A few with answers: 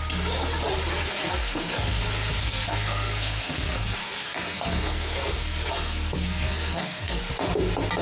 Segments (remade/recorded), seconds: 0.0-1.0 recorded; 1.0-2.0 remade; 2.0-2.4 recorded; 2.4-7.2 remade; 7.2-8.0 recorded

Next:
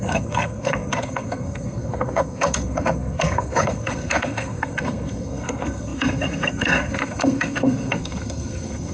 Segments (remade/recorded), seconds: 0.0-8.9 remade

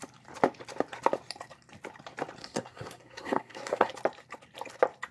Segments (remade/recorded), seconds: 0.0-2.4 recorded; 2.4-3.9 remade; 3.9-5.1 recorded